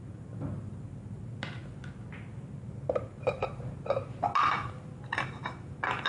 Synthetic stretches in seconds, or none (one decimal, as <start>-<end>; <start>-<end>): none